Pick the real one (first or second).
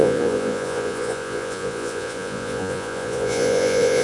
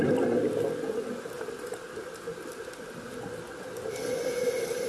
second